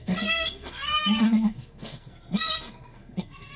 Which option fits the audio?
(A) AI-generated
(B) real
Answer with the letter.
A